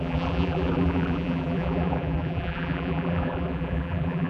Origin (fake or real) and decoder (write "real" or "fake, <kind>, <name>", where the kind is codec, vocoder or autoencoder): fake, vocoder, BigVGAN v2